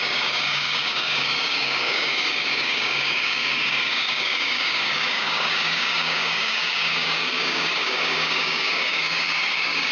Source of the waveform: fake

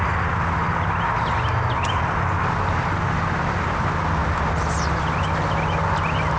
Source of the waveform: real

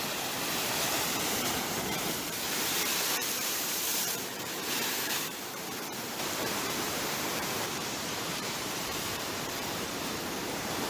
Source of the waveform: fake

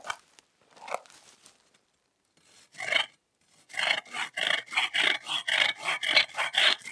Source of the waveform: real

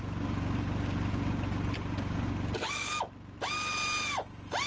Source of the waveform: real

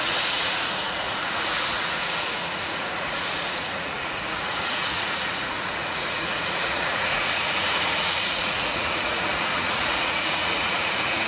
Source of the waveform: fake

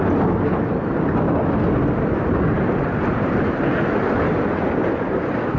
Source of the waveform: real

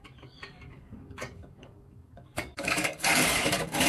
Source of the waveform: fake